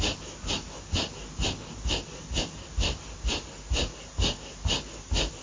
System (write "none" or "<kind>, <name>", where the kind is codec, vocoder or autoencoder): none